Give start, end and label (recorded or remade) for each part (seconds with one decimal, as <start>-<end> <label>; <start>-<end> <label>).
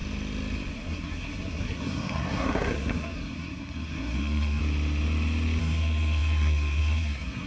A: 0.0-0.7 recorded; 0.7-4.6 remade; 4.6-5.6 recorded; 5.6-7.5 remade